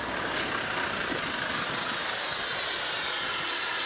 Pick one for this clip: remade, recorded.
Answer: recorded